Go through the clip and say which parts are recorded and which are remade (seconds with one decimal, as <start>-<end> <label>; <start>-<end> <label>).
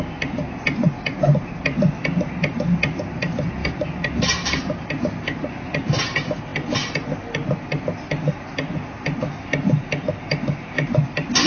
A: 0.0-11.5 recorded